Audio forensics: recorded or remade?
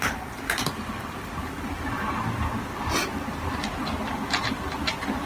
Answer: recorded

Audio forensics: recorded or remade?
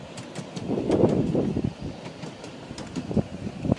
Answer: recorded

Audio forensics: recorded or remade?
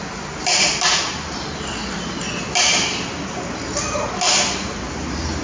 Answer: recorded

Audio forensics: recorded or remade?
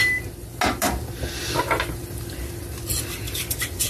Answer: recorded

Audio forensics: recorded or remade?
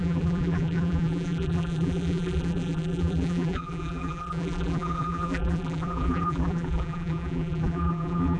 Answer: remade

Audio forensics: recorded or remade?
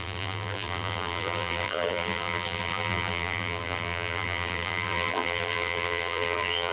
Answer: remade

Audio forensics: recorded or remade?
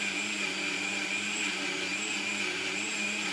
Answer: remade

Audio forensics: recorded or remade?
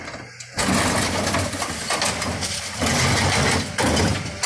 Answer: recorded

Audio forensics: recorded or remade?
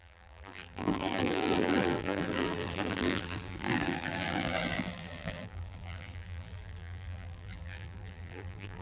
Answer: remade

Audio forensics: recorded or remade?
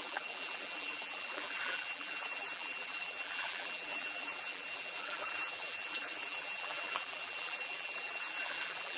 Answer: remade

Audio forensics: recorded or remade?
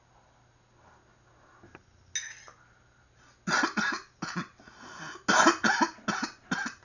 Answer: recorded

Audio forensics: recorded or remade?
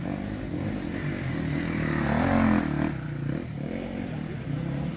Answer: recorded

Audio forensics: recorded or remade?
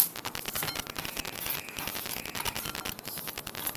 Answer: recorded